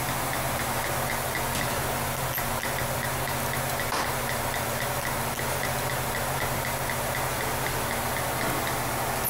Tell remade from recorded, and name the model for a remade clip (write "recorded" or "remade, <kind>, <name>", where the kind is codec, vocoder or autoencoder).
recorded